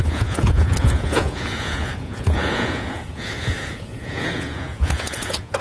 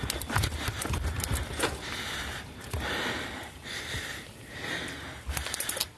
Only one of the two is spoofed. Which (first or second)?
first